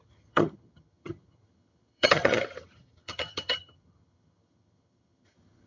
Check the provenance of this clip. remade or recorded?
remade